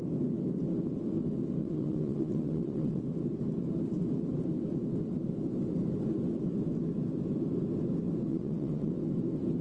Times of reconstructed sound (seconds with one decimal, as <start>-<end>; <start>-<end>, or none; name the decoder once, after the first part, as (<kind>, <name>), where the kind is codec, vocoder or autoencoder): 1.6-3.0 (vocoder, WaveNeXt); 8.3-8.9